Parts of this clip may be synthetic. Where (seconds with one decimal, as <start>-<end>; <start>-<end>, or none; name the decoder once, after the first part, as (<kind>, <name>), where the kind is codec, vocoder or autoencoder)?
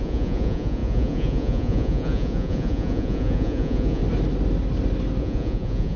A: 0.0-4.0 (vocoder, Vocos); 5.2-6.0